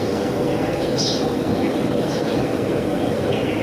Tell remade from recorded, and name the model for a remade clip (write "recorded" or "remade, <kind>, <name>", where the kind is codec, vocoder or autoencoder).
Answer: remade, codec, SNAC